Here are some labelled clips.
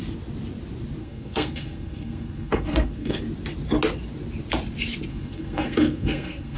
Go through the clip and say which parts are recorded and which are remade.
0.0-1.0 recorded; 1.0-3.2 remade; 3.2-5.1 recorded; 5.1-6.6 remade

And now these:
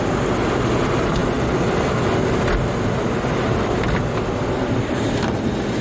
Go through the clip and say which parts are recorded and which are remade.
0.0-5.8 recorded